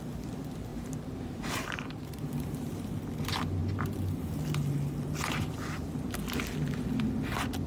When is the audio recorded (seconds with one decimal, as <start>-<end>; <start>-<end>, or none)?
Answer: 0.0-0.7; 2.7-7.7